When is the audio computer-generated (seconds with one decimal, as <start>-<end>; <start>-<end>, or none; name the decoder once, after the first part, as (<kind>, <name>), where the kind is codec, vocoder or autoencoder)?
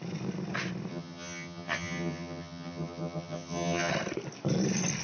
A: 0.9-3.9 (vocoder, HiFi-GAN)